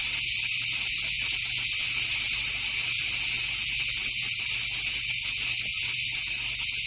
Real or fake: real